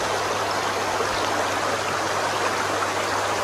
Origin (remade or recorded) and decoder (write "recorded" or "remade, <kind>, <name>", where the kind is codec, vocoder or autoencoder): recorded